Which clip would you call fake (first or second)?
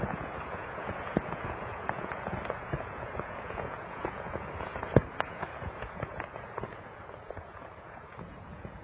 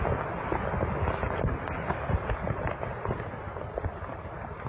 first